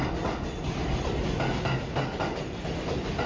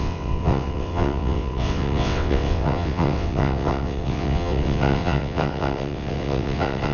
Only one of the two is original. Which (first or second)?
first